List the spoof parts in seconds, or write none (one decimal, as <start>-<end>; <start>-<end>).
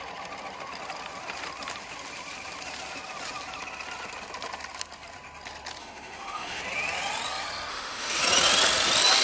5.8-6.6; 7.7-8.2